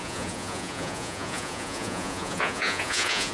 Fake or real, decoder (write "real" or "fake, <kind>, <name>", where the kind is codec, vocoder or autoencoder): fake, vocoder, Vocos